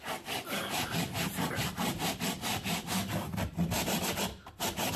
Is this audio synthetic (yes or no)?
no